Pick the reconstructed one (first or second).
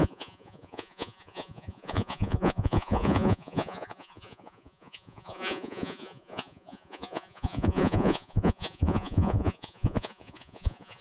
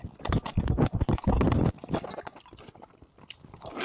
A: first